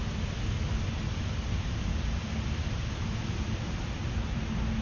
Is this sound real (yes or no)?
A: yes